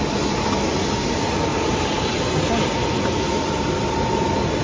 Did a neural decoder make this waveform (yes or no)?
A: no